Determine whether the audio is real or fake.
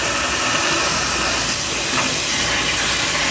real